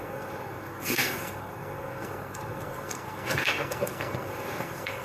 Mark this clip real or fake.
fake